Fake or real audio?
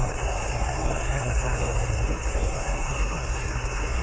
fake